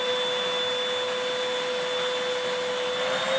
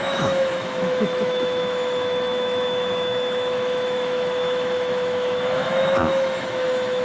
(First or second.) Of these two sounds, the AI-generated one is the second